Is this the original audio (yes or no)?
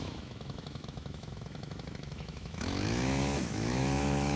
no